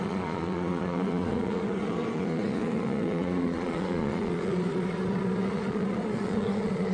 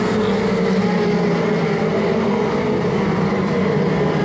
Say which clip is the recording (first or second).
second